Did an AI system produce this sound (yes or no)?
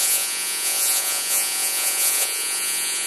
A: yes